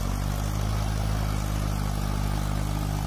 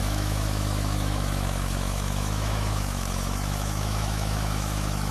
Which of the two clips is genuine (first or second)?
first